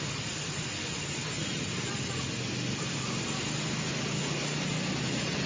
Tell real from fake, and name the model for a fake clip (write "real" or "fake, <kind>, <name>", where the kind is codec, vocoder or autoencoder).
real